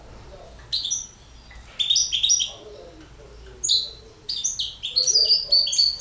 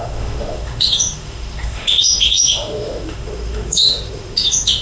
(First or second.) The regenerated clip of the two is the second